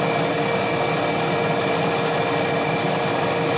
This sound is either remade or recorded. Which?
recorded